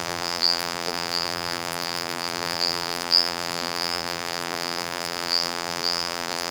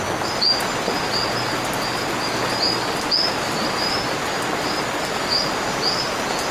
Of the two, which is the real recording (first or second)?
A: second